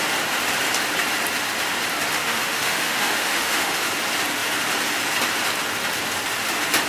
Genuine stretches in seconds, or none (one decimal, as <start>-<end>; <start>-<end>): 0.0-2.2; 3.9-6.9